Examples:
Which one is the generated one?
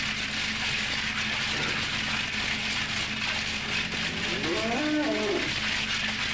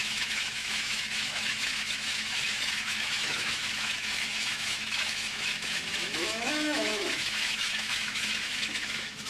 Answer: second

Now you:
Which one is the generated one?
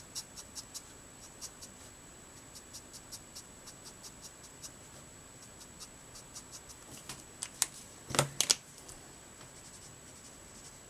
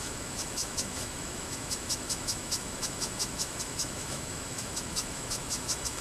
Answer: second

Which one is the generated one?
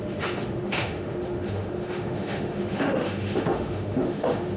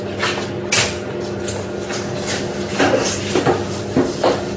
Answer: first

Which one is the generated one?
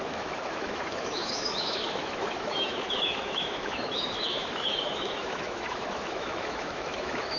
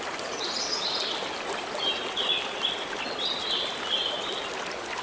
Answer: first